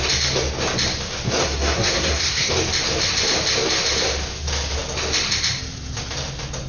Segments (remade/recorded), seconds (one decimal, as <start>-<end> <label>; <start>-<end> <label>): 0.0-1.4 recorded; 1.4-2.5 remade; 2.5-6.7 recorded